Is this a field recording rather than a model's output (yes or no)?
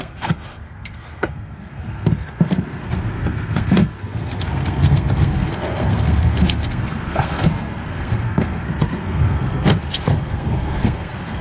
no